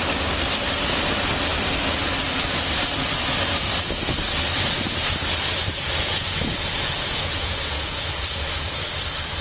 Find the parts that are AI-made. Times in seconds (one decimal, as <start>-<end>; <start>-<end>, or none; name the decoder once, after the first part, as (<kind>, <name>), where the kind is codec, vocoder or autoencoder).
5.6-8.9 (vocoder, Vocos)